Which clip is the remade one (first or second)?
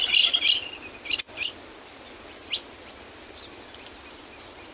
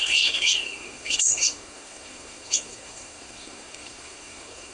second